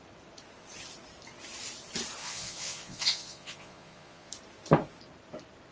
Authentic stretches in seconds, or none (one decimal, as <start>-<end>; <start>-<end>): 0.0-2.2; 4.3-5.7